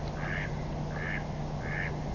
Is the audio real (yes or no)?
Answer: yes